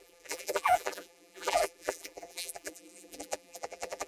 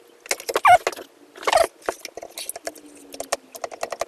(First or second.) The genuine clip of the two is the second